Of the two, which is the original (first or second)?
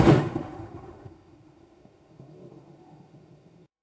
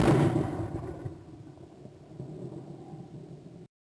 second